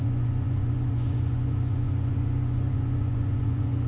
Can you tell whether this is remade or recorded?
remade